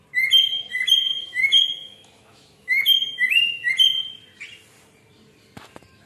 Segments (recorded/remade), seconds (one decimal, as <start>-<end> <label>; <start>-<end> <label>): 0.0-1.1 recorded; 1.1-3.7 remade; 3.7-6.1 recorded